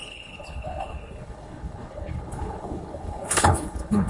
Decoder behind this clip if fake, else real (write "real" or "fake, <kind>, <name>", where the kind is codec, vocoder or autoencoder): fake, codec, HILCodec